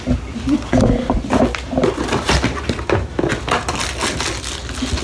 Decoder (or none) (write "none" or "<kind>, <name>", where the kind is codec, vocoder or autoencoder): none